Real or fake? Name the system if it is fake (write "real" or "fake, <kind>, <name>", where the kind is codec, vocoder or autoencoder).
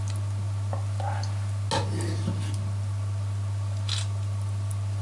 real